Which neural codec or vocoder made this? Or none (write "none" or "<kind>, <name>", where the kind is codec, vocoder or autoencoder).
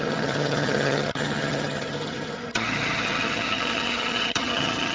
vocoder, HiFi-GAN